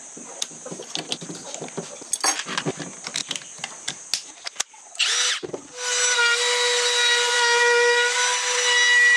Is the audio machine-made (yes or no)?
no